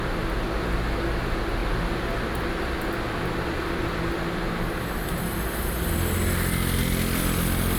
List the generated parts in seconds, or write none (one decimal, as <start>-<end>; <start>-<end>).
none